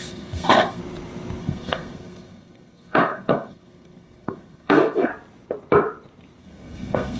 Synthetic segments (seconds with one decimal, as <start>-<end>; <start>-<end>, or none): 0.0-0.8; 1.4-5.1; 6.4-7.2